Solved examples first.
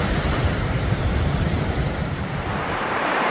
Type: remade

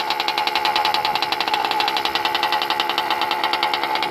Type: recorded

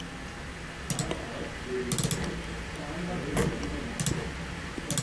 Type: recorded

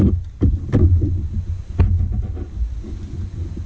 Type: recorded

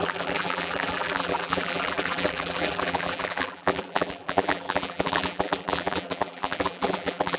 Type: remade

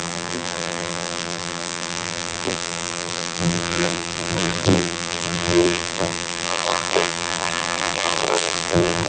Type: remade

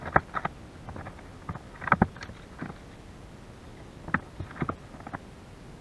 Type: recorded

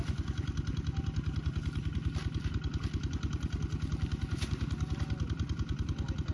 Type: recorded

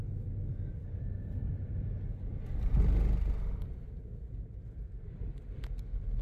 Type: recorded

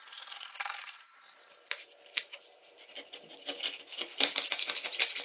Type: remade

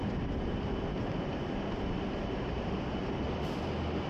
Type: remade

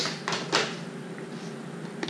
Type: recorded